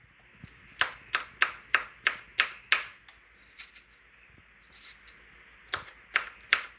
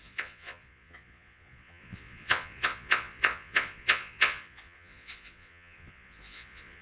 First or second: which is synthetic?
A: second